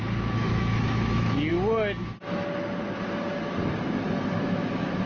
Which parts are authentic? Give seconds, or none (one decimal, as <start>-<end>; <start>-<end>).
1.5-4.4